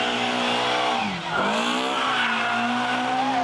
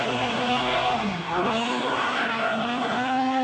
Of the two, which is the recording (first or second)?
first